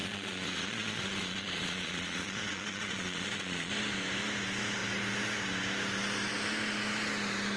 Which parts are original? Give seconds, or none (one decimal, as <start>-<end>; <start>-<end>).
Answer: 3.7-7.6